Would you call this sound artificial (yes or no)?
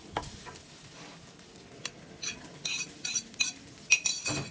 no